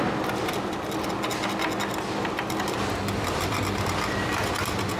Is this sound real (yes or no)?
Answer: yes